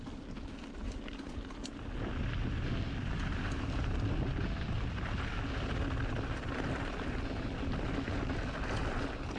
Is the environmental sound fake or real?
real